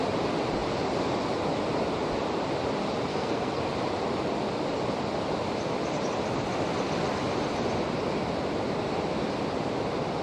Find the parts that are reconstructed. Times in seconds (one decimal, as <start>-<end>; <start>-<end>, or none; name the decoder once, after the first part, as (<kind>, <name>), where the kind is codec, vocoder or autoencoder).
3.1-3.6 (codec, SNAC)